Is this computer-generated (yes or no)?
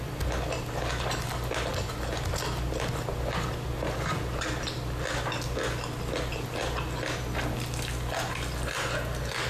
no